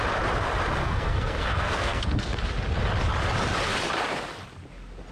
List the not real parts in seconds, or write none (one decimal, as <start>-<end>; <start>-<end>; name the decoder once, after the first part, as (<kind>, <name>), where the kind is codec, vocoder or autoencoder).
0.8-2.4 (codec, SNAC)